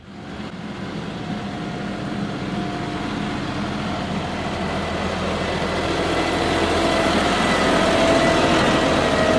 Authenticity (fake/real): real